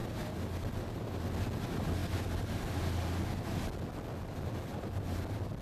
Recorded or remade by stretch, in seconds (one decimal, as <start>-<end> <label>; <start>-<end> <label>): 0.0-5.6 recorded